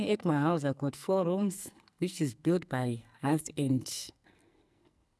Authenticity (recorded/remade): remade